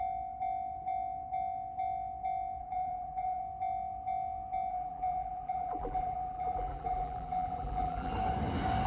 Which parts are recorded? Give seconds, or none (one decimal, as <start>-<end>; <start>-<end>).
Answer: 0.0-2.6; 3.4-4.7; 8.1-8.9